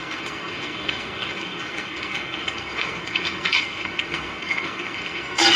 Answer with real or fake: fake